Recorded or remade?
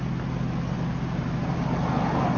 recorded